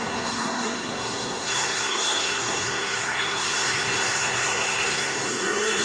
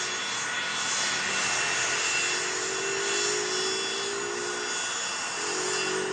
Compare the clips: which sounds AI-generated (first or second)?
first